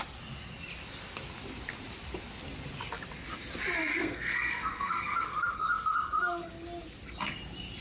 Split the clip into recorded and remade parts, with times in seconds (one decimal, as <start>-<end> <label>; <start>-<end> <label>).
0.0-3.9 recorded; 3.9-6.5 remade; 6.5-7.8 recorded